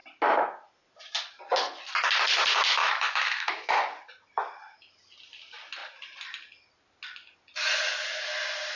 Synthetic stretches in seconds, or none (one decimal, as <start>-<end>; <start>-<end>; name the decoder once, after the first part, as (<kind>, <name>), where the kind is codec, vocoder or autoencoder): 2.8-3.7 (autoencoder, DAC-VAE)